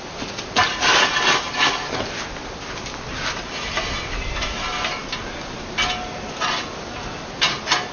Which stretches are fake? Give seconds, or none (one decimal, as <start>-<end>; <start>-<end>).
none